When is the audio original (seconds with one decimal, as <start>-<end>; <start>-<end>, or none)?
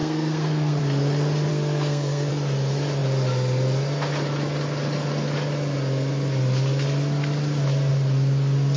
0.8-1.5; 2.3-8.8